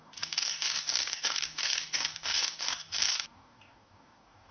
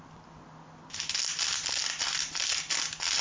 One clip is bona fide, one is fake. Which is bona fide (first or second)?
second